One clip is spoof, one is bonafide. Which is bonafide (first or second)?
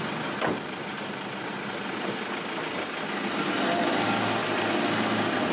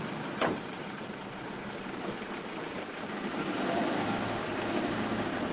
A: first